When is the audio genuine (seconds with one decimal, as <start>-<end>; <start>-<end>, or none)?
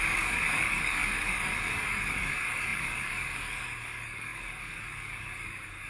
none